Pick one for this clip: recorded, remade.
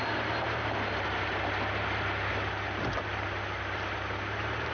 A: recorded